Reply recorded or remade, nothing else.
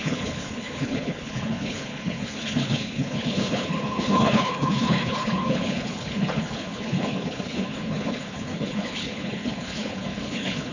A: remade